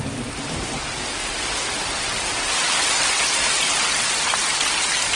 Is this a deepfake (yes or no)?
no